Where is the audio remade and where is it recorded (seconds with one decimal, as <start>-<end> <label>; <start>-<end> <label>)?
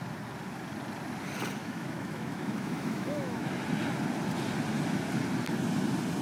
0.0-1.6 recorded; 1.6-3.5 remade; 3.5-6.2 recorded